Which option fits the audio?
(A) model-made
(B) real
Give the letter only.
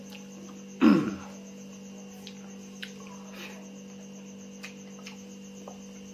B